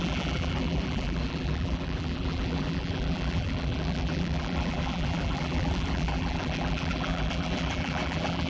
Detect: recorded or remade remade